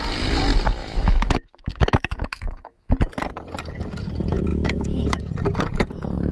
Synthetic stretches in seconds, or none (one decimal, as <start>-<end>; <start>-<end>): 0.8-2.9; 4.5-5.2